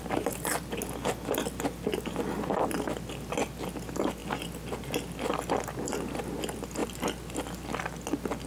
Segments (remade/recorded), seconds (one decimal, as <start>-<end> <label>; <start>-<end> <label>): 0.0-8.5 recorded